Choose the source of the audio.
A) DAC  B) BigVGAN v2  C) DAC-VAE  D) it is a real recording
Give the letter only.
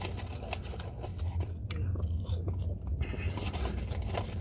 D